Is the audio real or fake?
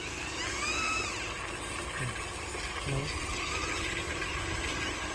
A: real